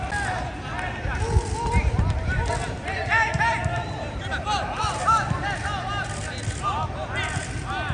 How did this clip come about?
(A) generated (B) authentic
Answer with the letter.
B